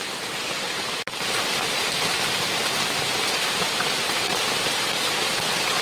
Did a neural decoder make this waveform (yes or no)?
yes